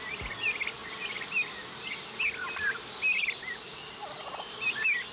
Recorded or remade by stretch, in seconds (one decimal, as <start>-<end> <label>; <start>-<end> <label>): 0.0-5.1 recorded